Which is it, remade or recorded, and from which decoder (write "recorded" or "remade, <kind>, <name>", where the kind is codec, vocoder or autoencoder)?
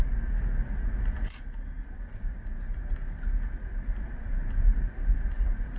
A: recorded